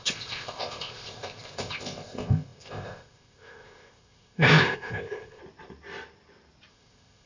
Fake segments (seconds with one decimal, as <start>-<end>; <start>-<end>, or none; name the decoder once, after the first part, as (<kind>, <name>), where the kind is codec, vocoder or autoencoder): 0.0-5.4 (codec, ZipCodec); 6.7-7.3